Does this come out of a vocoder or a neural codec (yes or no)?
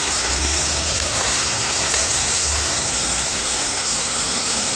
yes